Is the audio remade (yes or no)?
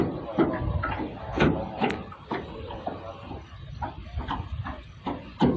no